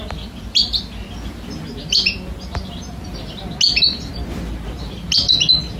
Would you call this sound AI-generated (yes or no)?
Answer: no